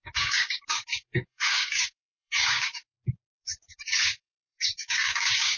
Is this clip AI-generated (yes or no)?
yes